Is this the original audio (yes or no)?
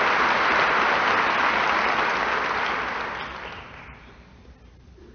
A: yes